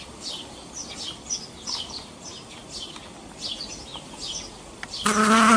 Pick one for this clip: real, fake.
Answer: real